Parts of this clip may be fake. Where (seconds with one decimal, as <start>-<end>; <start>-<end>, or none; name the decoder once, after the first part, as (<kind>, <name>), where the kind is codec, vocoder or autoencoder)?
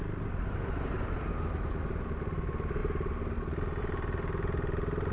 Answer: none